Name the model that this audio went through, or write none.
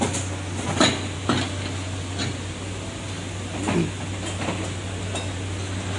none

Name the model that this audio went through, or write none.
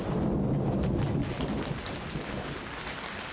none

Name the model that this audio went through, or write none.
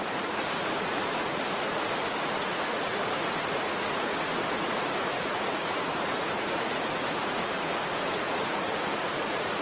vocoder, Vocos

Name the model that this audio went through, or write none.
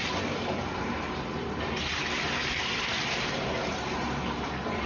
none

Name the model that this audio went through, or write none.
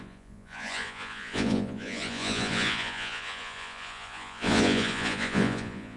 vocoder, Vocos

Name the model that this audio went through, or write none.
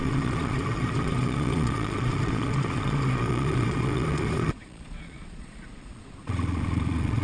vocoder, Vocos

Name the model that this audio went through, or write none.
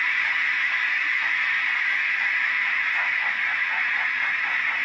vocoder, Vocos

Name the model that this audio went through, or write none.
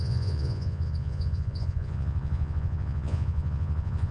vocoder, Vocos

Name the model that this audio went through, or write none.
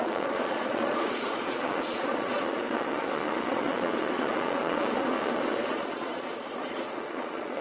vocoder, Vocos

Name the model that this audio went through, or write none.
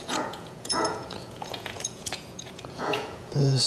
vocoder, Vocos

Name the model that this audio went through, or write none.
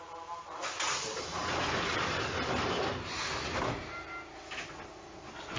none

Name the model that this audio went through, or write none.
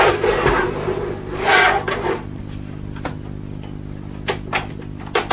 none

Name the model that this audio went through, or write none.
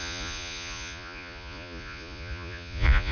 vocoder, Vocos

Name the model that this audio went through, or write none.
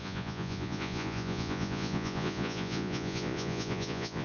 vocoder, Vocos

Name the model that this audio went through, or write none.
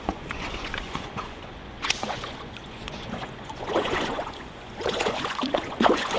vocoder, Vocos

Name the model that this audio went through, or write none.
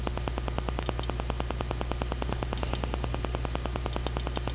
none